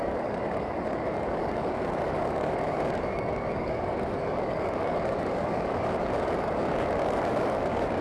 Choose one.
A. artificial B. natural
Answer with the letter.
A